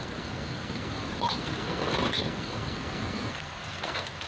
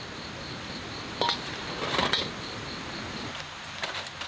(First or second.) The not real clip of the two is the first